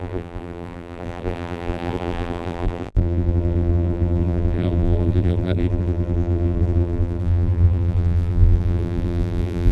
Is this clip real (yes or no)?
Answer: no